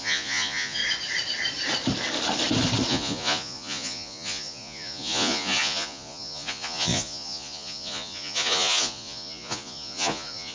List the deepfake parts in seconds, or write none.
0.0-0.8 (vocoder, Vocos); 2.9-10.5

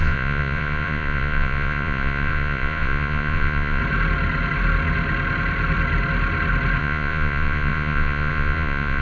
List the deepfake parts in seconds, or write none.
0.0-3.8 (vocoder, Vocos); 6.8-9.0

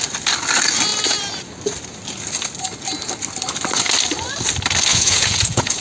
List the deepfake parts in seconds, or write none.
4.9-5.8 (vocoder, Vocos)

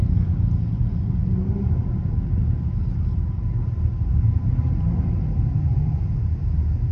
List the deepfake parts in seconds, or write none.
none

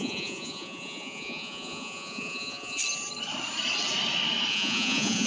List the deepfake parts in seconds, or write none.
0.0-2.8 (vocoder, Vocos); 4.5-5.3

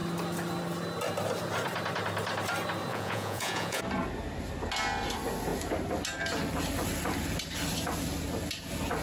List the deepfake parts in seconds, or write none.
2.9-3.8 (vocoder, Vocos)

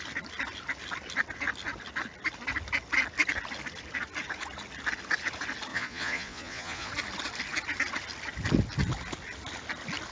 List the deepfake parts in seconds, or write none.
5.7-6.9 (vocoder, Vocos)

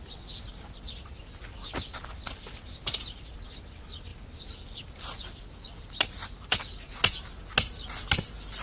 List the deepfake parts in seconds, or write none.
none